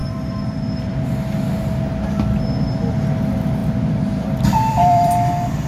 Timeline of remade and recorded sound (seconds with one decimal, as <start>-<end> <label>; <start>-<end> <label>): 0.0-1.0 remade; 1.0-3.6 recorded; 3.6-5.3 remade; 5.3-5.7 recorded